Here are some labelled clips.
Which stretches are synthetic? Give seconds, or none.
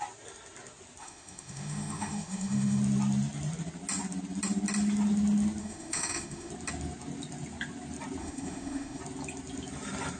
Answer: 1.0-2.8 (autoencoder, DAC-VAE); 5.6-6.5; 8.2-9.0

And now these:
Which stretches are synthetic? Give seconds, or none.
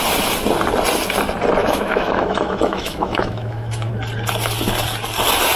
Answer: 1.6-3.9 (autoencoder, DAC-VAE)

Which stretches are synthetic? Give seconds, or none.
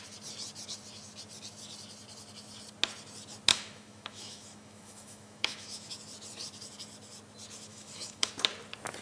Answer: 3.5-5.9 (autoencoder, DAC-VAE); 7.7-8.3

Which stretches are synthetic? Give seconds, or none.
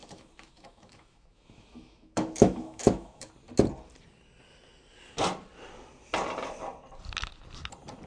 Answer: 0.0-3.3 (autoencoder, DAC-VAE)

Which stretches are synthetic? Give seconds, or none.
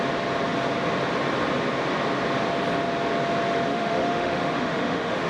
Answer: 3.7-5.3 (autoencoder, DAC-VAE)